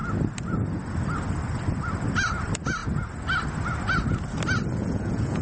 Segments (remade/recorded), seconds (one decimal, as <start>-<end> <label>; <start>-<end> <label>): 0.0-4.8 recorded; 4.8-5.4 remade